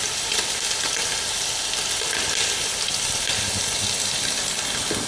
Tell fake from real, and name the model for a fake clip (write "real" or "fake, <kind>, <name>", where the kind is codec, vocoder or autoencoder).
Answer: real